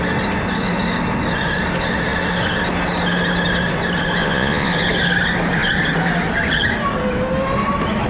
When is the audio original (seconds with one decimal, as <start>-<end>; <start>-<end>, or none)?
0.0-4.2; 4.7-8.1